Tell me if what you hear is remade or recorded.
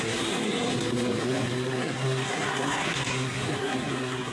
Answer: remade